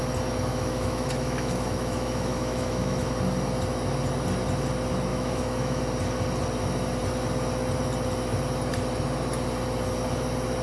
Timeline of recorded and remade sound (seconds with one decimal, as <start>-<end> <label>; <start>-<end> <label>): 0.0-0.5 recorded; 0.5-3.1 remade; 3.1-5.1 recorded; 5.1-5.8 remade; 5.8-10.6 recorded